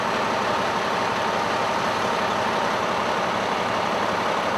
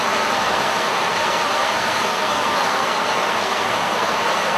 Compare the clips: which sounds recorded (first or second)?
first